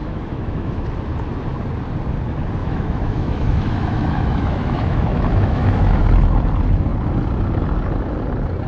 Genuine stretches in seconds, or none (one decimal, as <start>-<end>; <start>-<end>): 0.8-2.6; 6.0-8.7